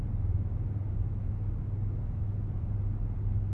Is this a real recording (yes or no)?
yes